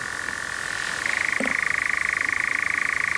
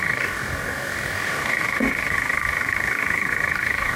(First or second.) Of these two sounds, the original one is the first